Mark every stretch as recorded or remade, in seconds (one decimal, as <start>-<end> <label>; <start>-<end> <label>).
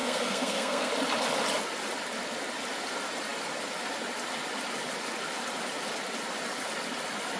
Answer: 0.0-0.9 remade; 0.9-7.4 recorded